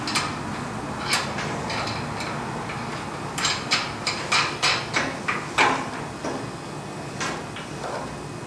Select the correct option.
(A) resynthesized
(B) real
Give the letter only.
B